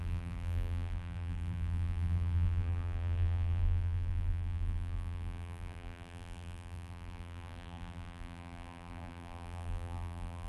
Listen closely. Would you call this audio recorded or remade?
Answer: remade